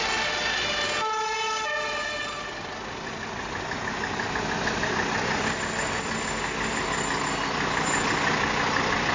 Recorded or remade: recorded